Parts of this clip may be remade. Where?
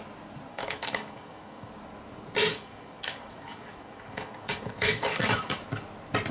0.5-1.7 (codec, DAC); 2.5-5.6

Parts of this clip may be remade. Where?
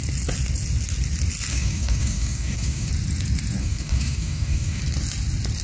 1.5-2.9 (codec, DAC); 3.6-4.8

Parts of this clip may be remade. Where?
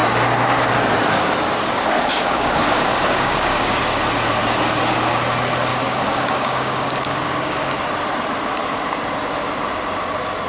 2.1-3.8 (codec, DAC); 5.7-7.8